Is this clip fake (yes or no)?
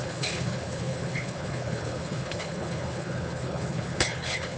yes